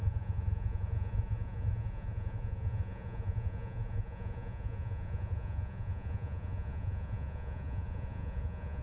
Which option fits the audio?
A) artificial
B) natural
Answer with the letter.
A